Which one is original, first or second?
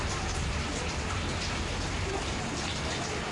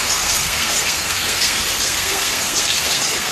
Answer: first